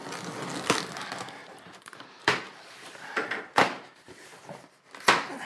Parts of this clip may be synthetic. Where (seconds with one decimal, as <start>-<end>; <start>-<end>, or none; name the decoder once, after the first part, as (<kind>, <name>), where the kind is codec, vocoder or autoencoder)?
1.4-4.3 (vocoder, BigVGAN v2)